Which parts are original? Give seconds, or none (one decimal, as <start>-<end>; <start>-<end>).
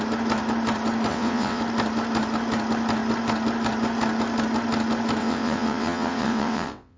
0.0-1.1; 1.6-5.2